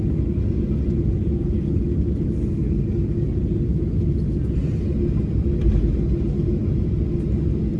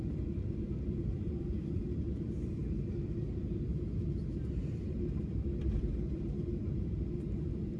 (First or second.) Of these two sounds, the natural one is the first